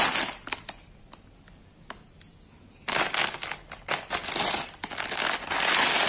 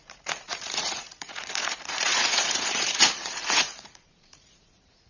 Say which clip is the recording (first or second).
first